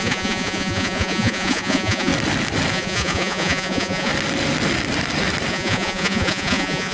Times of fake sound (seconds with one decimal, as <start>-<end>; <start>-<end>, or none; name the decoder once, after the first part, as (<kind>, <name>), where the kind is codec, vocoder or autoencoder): 0.0-2.1 (vocoder, Vocos); 2.7-4.1; 5.5-6.9